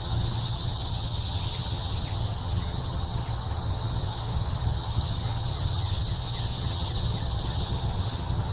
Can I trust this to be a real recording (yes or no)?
no